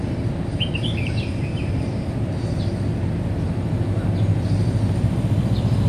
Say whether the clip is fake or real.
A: real